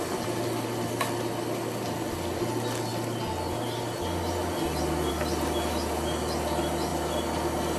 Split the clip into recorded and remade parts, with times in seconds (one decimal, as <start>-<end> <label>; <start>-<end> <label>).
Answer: 0.0-7.8 recorded